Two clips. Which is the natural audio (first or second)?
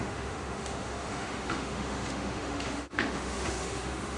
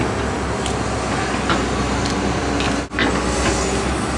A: second